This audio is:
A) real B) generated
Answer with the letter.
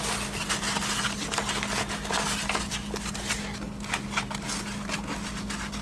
A